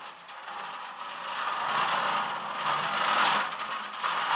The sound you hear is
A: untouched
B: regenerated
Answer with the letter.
B